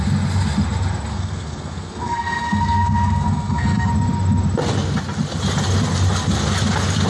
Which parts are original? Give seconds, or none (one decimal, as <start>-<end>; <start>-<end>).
0.0-1.1; 3.9-7.1